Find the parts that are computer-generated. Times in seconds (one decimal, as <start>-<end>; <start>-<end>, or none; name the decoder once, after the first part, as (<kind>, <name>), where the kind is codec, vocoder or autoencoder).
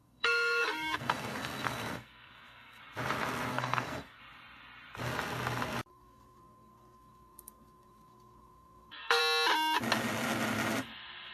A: 0.0-2.8 (codec, SNAC); 3.5-4.2; 5.9-9.2